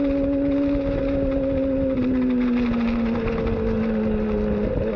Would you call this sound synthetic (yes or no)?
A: no